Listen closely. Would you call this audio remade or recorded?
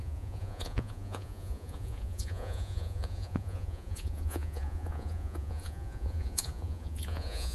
remade